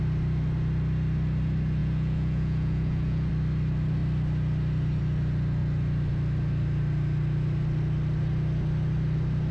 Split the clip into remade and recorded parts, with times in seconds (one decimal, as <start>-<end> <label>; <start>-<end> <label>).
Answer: 0.0-1.8 recorded; 1.8-3.3 remade; 3.3-9.5 recorded